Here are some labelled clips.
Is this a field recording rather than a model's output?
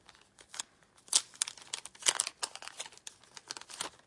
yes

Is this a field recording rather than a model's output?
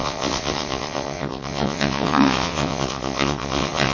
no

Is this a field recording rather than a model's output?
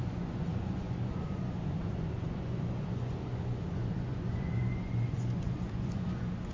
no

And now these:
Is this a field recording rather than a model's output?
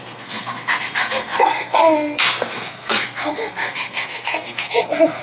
no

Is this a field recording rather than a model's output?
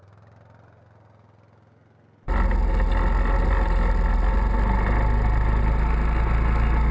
yes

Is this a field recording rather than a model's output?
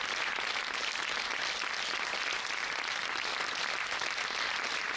yes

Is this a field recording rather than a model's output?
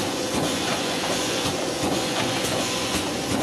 no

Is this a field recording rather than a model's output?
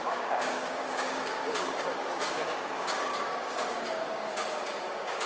no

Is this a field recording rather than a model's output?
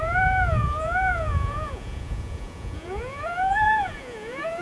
no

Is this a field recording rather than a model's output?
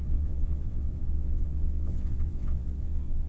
no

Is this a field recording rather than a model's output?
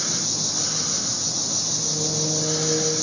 yes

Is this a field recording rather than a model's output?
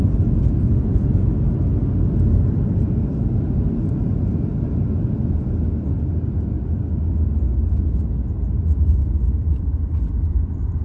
yes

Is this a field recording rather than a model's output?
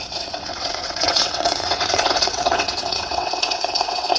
no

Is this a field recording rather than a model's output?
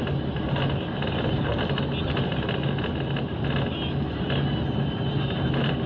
yes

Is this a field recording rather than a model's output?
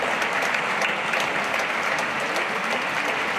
yes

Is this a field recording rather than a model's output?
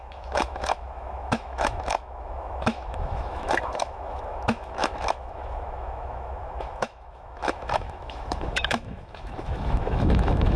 no